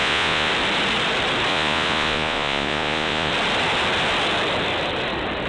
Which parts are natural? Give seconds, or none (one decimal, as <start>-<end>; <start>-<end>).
0.5-1.5; 3.3-5.5